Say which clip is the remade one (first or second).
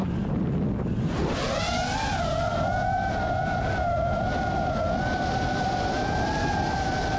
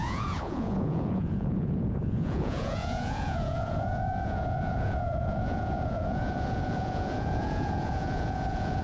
second